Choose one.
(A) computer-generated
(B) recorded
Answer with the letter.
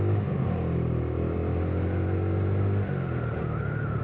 B